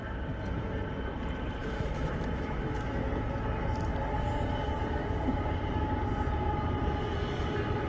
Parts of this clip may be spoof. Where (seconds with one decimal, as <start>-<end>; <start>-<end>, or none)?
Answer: 1.6-3.1